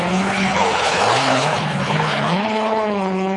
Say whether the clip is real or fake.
fake